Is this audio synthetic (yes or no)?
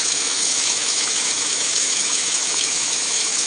yes